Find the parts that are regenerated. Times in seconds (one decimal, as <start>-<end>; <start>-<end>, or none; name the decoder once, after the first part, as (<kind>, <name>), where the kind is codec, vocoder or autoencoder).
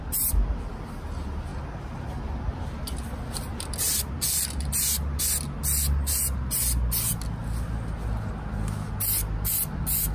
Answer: none